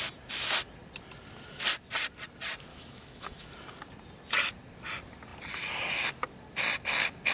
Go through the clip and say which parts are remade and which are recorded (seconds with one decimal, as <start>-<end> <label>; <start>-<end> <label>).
0.0-2.7 recorded; 2.7-3.5 remade; 3.5-7.3 recorded